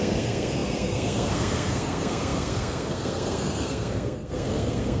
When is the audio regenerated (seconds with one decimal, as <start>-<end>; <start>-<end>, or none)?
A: 0.0-5.0